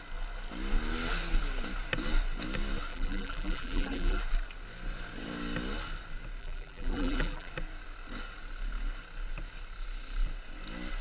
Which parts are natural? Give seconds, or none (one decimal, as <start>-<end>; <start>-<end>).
0.0-2.9; 4.2-6.4; 7.5-11.0